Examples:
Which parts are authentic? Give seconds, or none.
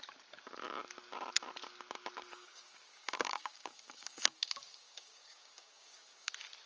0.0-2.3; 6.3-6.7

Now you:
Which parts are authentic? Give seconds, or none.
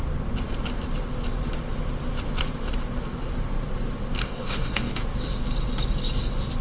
0.0-4.2; 4.9-6.6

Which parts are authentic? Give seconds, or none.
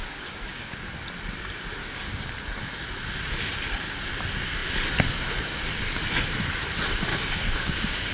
0.9-1.8; 2.3-7.1